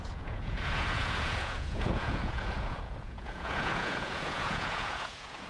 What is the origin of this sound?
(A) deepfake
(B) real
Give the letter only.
A